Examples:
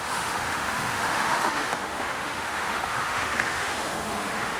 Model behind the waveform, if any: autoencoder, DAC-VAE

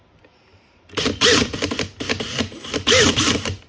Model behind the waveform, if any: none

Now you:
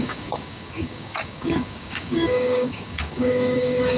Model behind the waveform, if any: codec, DAC